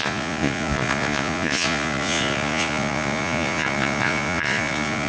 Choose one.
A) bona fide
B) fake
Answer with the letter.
B